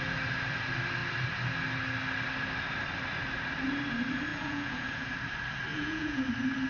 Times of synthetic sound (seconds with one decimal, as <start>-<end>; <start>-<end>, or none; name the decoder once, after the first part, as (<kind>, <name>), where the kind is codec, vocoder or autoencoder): 4.3-5.1 (vocoder, Vocos); 5.7-6.2

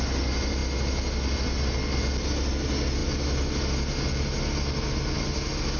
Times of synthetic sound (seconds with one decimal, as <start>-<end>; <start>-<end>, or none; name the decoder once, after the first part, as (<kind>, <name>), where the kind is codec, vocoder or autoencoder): none